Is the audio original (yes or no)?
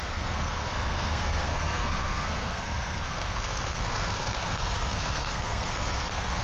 no